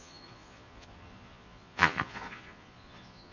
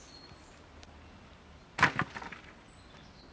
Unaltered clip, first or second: second